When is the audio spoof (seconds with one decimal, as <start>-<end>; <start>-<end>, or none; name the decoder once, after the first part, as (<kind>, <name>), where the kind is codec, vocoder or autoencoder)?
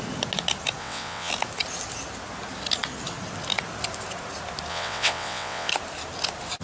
0.8-1.3 (vocoder, WaveNeXt); 4.7-5.7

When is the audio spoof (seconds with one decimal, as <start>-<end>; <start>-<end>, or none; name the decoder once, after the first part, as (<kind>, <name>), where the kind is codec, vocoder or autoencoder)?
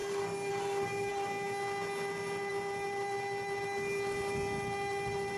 none